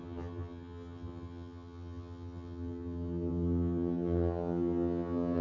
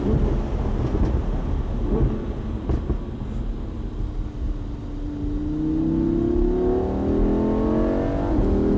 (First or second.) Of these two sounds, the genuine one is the second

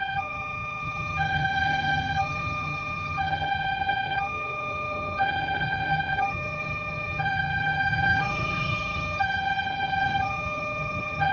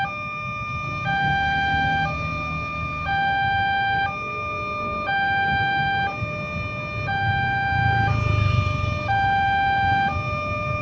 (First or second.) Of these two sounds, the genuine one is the second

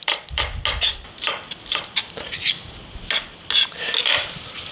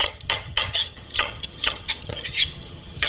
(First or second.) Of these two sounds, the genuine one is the first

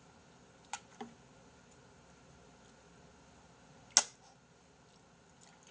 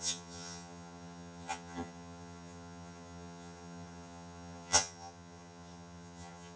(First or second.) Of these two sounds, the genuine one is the first